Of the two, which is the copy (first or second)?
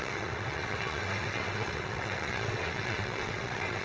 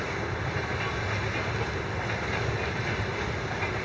first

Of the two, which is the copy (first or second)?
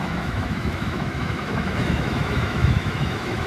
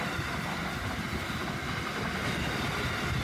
first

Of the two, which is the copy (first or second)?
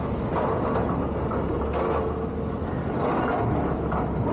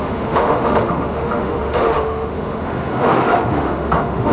second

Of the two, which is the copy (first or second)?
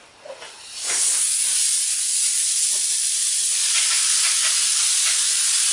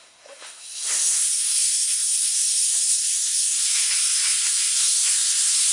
second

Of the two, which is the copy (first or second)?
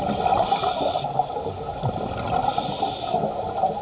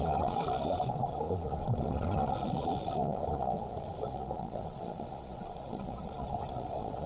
second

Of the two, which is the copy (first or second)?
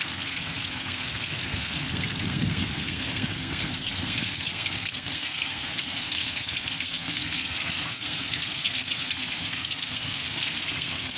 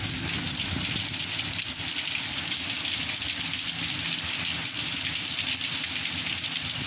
first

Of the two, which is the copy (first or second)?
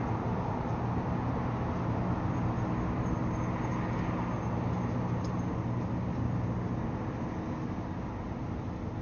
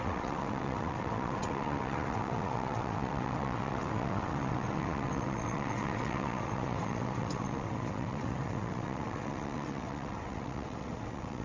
second